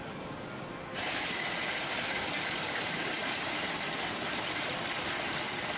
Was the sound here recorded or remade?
recorded